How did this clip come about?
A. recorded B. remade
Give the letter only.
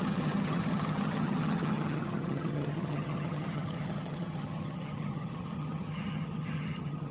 B